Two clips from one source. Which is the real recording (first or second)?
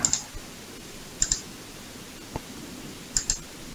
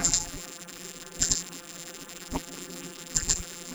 first